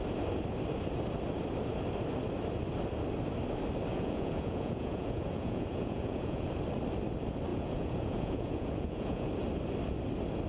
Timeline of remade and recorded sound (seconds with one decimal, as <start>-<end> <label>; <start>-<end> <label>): 0.0-3.9 recorded; 3.9-6.5 remade; 6.5-7.5 recorded; 7.5-9.3 remade; 9.3-10.5 recorded